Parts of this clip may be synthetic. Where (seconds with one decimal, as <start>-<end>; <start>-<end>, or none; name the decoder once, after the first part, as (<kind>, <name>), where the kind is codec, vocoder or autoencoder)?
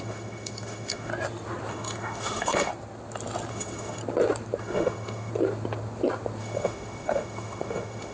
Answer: 0.0-1.1 (autoencoder, DAC-VAE); 1.7-2.7; 3.5-4.0; 4.6-5.3; 6.4-8.1